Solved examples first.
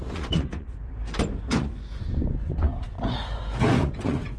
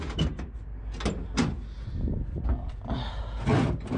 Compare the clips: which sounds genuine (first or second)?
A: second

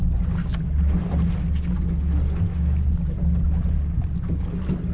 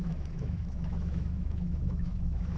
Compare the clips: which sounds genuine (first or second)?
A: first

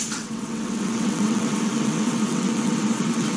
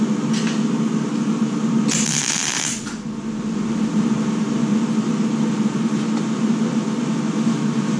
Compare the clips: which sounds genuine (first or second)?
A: second